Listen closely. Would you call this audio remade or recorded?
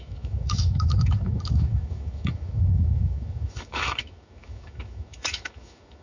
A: remade